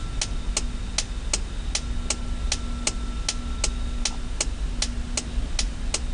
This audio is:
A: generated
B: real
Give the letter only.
B